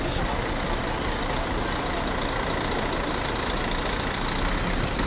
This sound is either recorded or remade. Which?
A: recorded